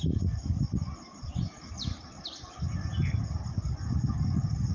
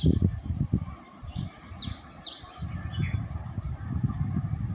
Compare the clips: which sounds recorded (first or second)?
first